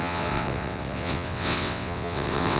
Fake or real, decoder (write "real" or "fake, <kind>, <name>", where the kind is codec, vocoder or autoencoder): fake, vocoder, WaveNeXt